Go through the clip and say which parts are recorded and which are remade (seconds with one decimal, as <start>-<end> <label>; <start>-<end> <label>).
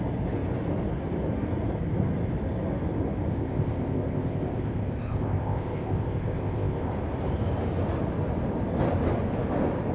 0.0-3.3 recorded; 3.3-6.9 remade; 6.9-9.9 recorded